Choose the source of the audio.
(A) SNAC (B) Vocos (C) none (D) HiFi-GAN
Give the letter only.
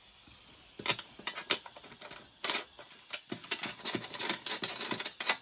C